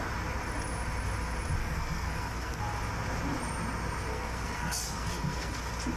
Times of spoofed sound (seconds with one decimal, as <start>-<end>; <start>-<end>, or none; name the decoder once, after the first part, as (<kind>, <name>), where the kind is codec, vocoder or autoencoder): 1.6-2.6 (codec, SNAC); 4.1-5.6